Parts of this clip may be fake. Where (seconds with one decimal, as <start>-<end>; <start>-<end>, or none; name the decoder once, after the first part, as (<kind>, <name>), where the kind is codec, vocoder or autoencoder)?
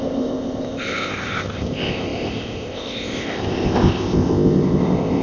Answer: 0.0-5.2 (codec, ZipCodec)